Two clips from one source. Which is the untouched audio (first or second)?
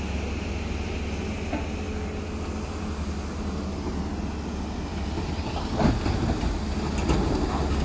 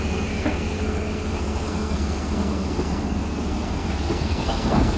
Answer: first